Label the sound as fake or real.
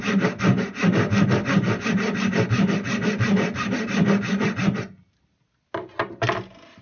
real